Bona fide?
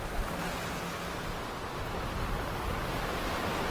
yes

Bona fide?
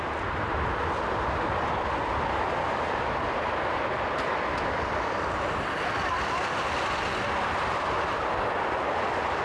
yes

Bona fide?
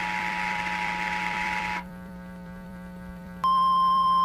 no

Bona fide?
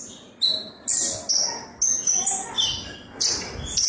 yes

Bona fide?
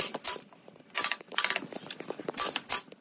yes